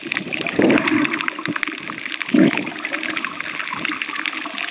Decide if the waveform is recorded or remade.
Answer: recorded